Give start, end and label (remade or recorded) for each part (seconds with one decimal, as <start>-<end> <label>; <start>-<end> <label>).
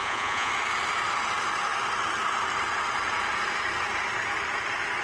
0.0-0.5 remade; 0.5-5.0 recorded